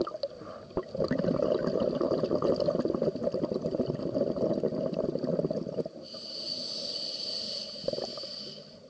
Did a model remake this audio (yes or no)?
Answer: no